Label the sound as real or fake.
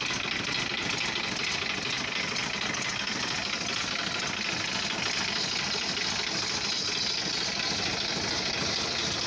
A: real